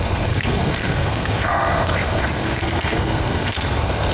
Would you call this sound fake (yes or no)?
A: yes